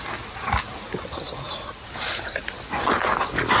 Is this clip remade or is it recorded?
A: recorded